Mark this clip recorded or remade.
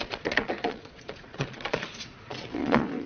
remade